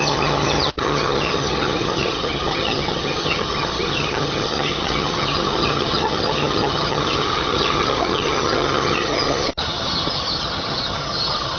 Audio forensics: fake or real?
fake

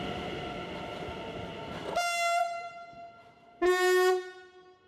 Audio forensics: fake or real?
real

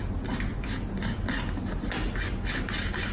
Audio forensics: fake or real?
real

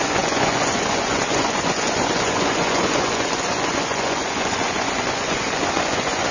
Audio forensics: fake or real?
fake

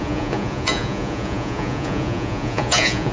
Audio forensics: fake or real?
fake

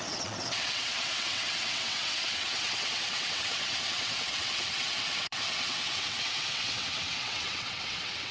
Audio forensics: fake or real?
fake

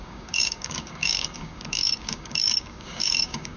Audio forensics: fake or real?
fake